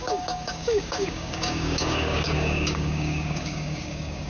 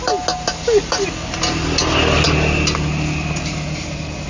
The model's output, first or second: first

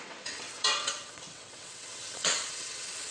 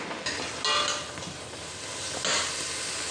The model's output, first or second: first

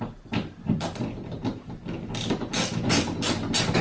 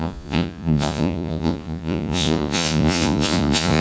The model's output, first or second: second